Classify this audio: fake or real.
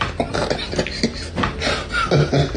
real